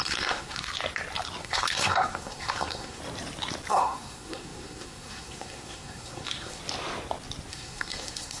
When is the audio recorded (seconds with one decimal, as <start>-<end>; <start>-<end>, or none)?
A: 0.7-1.4; 3.0-3.7; 6.6-7.5